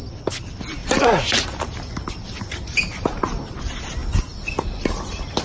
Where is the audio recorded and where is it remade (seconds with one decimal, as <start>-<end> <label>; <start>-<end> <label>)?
0.0-5.4 recorded